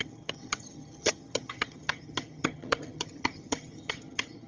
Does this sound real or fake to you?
fake